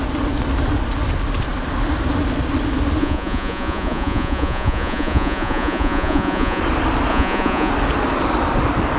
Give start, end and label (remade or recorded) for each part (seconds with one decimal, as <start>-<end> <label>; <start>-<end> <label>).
0.0-3.0 recorded; 3.0-6.6 remade; 6.6-7.1 recorded; 7.1-7.7 remade; 7.7-9.0 recorded